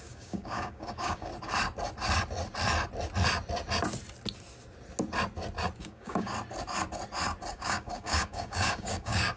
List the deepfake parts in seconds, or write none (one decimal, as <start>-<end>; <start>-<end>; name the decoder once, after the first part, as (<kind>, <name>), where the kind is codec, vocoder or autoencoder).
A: 0.0-1.3 (codec, DAC); 5.8-6.3; 7.5-9.4